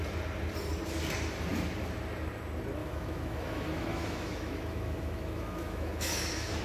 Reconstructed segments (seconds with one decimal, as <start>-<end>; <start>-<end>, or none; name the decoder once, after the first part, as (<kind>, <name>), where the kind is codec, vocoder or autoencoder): 2.8-6.6 (autoencoder, DAC-VAE)